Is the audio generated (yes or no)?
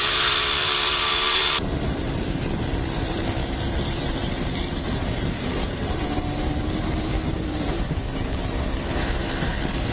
yes